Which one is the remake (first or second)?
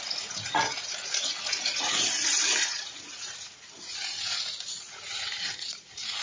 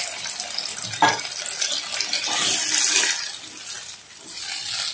first